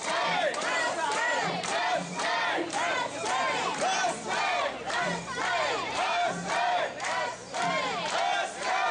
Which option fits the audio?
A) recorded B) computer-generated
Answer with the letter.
B